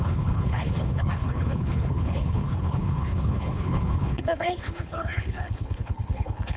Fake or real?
fake